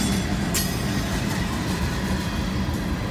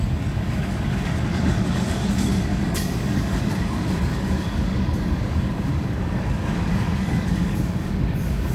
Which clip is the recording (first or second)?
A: first